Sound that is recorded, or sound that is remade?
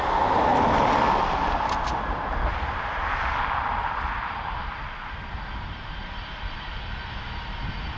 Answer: recorded